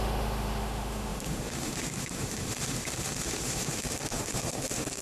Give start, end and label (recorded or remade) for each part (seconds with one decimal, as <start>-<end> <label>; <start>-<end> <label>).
0.0-5.0 remade